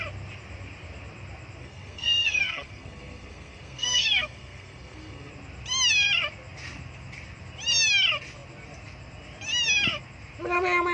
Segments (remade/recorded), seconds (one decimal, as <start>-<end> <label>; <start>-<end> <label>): 0.0-1.6 recorded; 1.6-5.3 remade; 5.3-10.9 recorded